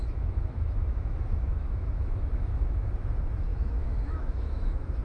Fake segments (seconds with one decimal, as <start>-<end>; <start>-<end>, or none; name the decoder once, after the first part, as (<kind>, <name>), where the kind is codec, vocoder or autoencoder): 0.0-2.9 (autoencoder, DAC-VAE); 3.5-5.0